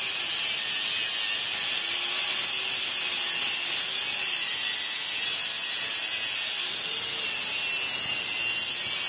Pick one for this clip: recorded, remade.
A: recorded